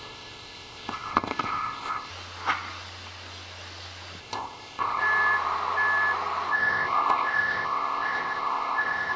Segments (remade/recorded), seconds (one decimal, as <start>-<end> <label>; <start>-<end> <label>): 0.0-2.1 remade; 2.1-4.2 recorded; 4.2-5.0 remade; 5.0-6.5 recorded; 6.5-9.2 remade